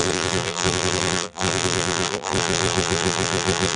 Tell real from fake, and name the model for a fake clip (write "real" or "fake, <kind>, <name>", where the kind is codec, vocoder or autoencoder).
fake, vocoder, BigVGAN v2